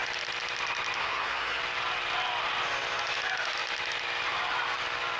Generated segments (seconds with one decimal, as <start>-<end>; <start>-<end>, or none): 1.0-1.6